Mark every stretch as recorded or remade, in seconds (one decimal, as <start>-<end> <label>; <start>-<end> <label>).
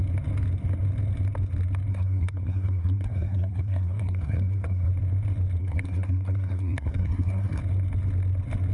0.0-1.9 recorded; 1.9-4.9 remade; 4.9-5.6 recorded; 5.6-7.6 remade; 7.6-8.7 recorded